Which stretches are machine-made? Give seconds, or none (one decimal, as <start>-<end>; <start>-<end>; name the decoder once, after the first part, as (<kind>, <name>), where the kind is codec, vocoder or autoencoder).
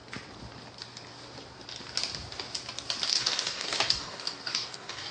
3.1-5.1 (codec, DAC)